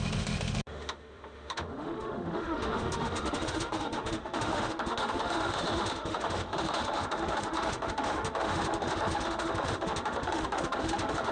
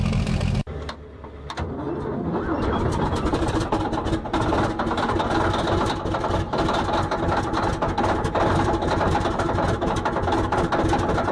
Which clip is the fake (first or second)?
first